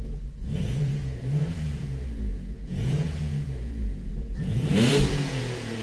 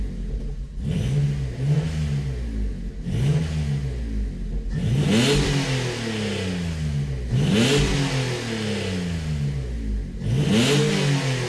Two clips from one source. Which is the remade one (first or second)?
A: first